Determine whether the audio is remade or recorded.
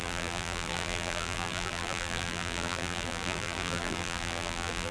remade